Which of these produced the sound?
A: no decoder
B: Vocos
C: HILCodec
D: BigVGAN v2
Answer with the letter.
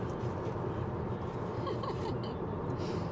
A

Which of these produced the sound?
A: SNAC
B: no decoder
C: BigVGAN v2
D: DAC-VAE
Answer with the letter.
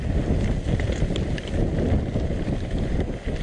B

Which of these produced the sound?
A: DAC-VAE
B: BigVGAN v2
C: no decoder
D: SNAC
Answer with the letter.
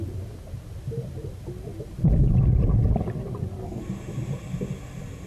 C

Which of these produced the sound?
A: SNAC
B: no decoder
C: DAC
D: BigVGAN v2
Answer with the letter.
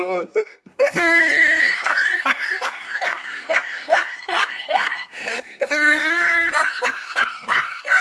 A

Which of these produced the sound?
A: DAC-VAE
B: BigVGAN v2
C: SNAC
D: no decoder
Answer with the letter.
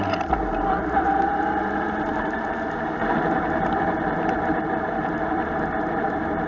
B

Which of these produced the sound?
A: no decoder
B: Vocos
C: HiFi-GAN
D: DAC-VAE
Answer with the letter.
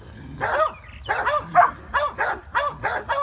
A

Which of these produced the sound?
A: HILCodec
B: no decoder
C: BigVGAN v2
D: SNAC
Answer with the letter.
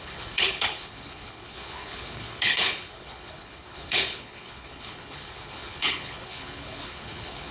A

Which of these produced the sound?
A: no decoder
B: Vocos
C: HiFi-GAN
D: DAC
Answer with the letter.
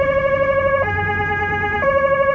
A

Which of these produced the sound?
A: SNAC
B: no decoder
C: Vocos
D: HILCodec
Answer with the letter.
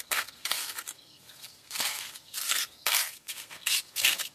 A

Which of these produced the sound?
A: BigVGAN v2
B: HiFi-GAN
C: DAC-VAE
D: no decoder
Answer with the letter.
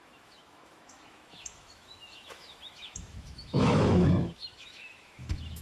C